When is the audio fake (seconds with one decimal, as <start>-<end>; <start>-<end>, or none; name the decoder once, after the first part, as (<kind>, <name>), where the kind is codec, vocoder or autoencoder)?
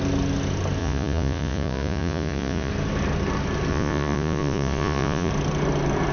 0.8-2.7 (vocoder, Vocos); 3.7-5.3